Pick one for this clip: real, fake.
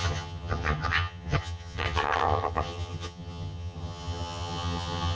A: fake